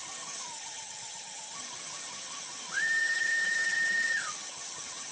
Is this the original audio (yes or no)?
no